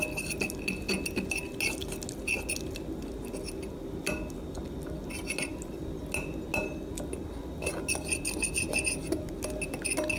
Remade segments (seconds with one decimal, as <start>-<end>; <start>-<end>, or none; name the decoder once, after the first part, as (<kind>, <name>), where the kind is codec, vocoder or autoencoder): none